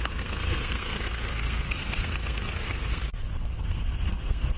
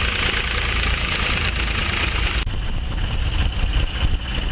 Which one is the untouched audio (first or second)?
second